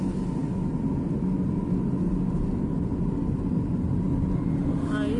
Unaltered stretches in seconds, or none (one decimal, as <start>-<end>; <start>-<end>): 0.0-5.2